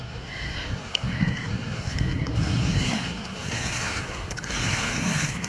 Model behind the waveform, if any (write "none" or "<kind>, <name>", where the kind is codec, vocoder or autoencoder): codec, SNAC